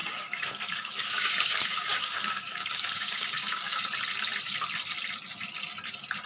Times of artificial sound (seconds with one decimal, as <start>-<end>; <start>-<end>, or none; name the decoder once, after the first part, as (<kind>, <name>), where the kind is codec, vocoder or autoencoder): 0.0-3.8 (codec, DAC)